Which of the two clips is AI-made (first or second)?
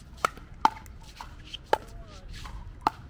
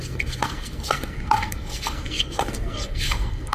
second